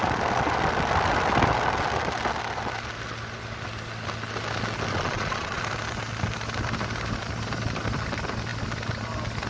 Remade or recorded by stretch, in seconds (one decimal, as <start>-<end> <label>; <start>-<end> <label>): 0.0-4.9 recorded; 4.9-5.6 remade; 5.6-9.5 recorded